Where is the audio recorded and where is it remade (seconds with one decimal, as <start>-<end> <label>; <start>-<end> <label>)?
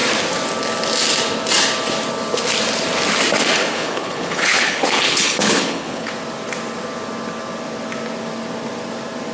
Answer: 0.0-3.6 recorded; 3.6-6.1 remade; 6.1-9.3 recorded